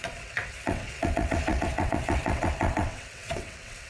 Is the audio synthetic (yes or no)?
yes